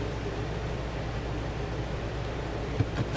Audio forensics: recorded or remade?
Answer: recorded